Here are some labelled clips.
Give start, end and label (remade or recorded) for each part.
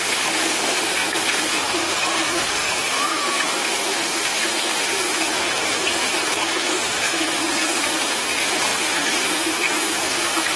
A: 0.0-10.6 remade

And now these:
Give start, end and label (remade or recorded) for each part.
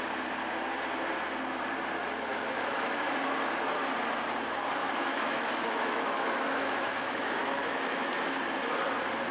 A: 0.0-2.3 recorded; 2.3-3.0 remade; 3.0-4.8 recorded; 4.8-8.0 remade; 8.0-9.3 recorded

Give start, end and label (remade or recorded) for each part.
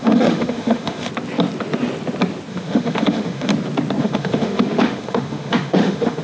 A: 0.0-1.1 remade; 1.1-2.5 recorded; 2.5-3.5 remade; 3.5-4.0 recorded; 4.0-6.2 remade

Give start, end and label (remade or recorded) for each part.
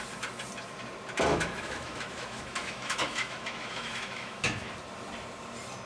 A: 0.0-1.3 recorded; 1.3-4.7 remade; 4.7-5.9 recorded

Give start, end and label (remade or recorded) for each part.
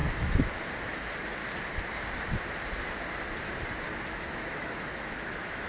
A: 0.0-0.8 recorded; 0.8-1.4 remade; 1.4-4.1 recorded; 4.1-5.7 remade